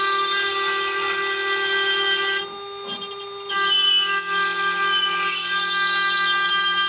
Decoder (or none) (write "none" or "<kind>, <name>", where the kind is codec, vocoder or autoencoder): none